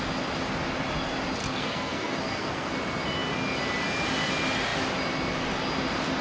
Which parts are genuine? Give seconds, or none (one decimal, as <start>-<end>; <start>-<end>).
0.0-1.4; 2.7-6.2